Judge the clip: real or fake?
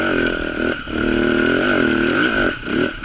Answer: real